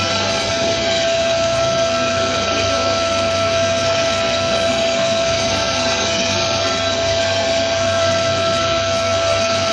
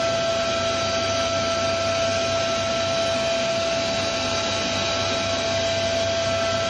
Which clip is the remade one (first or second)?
first